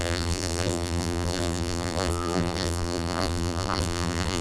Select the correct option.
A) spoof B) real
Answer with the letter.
A